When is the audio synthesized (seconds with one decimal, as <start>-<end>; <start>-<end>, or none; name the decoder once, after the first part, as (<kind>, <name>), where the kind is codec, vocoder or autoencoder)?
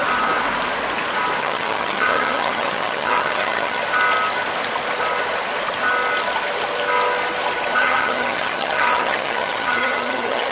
1.4-3.8 (vocoder, HiFi-GAN); 7.8-10.5